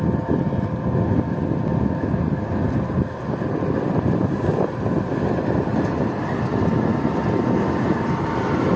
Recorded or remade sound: recorded